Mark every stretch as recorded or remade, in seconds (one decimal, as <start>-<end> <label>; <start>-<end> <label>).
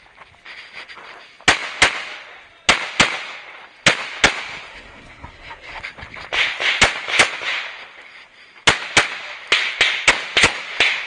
0.0-4.7 recorded; 4.7-5.8 remade; 5.8-11.1 recorded